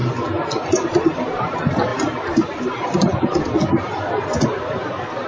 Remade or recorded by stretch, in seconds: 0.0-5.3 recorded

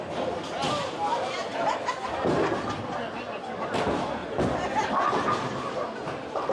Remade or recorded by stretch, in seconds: 0.0-6.5 recorded

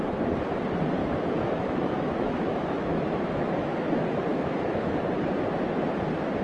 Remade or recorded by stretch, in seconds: 0.0-1.0 recorded; 1.0-3.9 remade; 3.9-4.3 recorded; 4.3-5.1 remade; 5.1-6.4 recorded